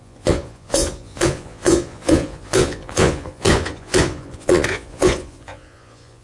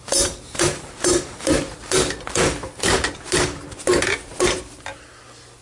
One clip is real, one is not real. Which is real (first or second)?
second